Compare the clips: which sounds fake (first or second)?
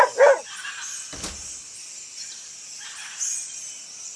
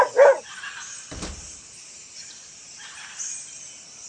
second